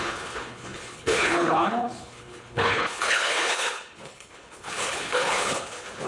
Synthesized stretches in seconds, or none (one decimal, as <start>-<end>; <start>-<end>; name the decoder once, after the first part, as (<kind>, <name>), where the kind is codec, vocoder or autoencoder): 0.0-6.1 (codec, HILCodec)